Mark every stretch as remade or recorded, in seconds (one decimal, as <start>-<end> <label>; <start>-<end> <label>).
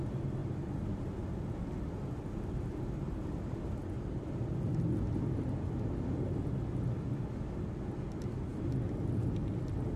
0.0-0.4 recorded; 0.4-1.0 remade; 1.0-10.0 recorded